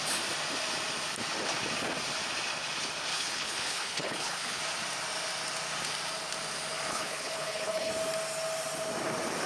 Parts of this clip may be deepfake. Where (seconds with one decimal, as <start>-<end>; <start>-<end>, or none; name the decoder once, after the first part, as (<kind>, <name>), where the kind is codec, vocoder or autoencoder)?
3.1-4.6 (codec, HILCodec); 6.9-7.9